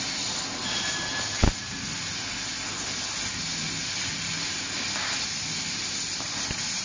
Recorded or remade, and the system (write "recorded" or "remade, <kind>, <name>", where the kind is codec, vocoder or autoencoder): recorded